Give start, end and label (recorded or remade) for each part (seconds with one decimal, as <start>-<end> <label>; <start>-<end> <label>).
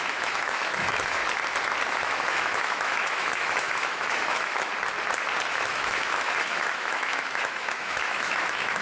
0.0-1.2 remade; 1.2-1.9 recorded; 1.9-4.7 remade; 4.7-5.5 recorded; 5.5-8.8 remade